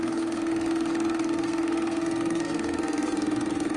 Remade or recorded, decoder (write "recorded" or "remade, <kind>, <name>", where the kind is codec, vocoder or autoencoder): remade, codec, SNAC